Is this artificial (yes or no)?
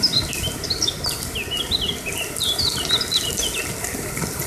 no